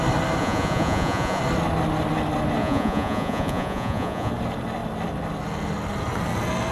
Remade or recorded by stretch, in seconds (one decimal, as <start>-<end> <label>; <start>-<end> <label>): 0.0-0.4 recorded; 0.4-1.4 remade; 1.4-2.6 recorded; 2.6-4.3 remade; 4.3-6.7 recorded